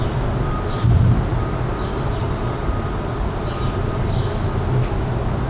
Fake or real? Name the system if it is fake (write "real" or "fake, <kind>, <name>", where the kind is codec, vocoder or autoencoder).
real